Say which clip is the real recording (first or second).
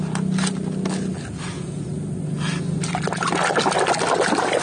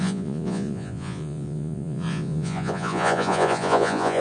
first